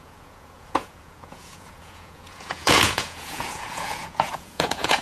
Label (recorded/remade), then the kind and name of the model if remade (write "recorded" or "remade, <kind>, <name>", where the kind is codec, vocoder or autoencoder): remade, vocoder, Vocos